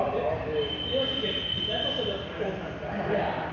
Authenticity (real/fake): real